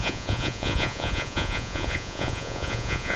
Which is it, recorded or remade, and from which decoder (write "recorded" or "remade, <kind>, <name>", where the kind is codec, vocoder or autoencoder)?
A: remade, vocoder, Vocos